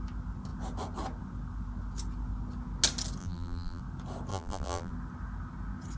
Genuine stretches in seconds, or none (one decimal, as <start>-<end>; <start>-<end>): 0.0-3.2; 3.8-4.3; 4.9-6.0